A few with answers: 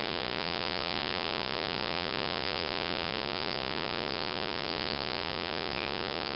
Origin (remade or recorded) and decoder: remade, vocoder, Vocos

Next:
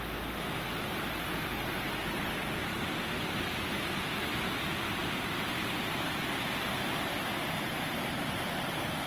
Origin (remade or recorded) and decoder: recorded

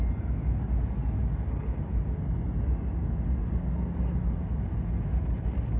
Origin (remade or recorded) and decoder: recorded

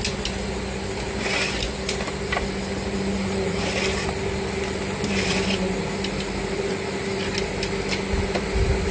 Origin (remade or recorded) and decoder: recorded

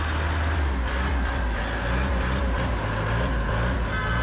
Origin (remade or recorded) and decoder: recorded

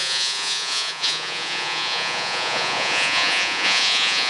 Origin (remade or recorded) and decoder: remade, vocoder, Vocos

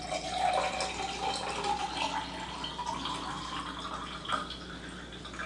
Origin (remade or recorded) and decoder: recorded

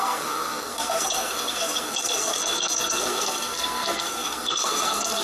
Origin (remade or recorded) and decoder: remade, codec, SNAC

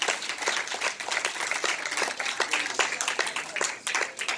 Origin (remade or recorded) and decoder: recorded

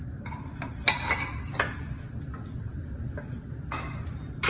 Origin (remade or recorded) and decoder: recorded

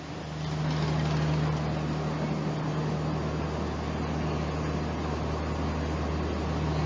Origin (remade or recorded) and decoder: recorded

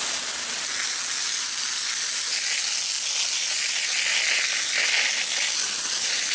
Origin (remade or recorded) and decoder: recorded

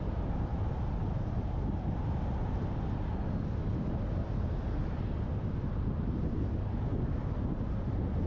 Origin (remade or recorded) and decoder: recorded